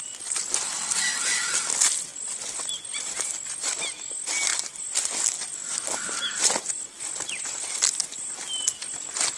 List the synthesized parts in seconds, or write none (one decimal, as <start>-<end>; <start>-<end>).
none